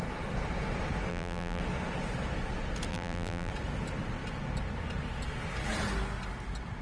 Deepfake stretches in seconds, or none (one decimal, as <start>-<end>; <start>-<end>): 1.1-1.6; 2.9-3.5